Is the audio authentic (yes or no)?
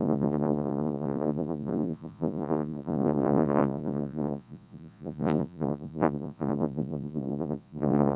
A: no